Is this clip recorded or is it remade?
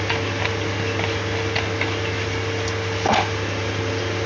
recorded